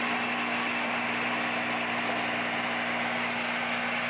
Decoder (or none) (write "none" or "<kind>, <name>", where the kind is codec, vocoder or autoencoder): none